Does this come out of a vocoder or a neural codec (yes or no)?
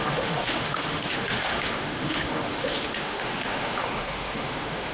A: yes